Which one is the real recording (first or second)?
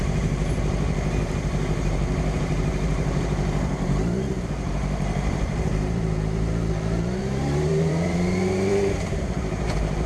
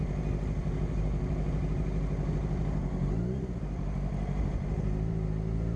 second